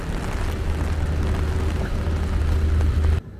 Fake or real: real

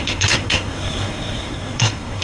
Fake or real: fake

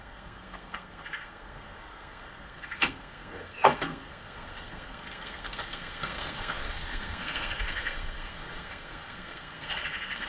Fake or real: fake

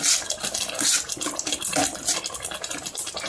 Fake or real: real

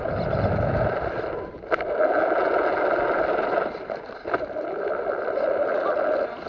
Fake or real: real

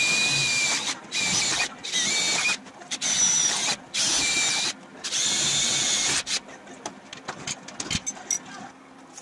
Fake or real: real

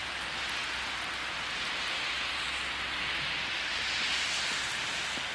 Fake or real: real